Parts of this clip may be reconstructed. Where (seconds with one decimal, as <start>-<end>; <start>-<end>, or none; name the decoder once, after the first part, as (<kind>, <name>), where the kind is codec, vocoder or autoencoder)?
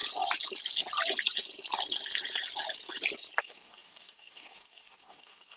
3.4-5.6 (codec, DAC)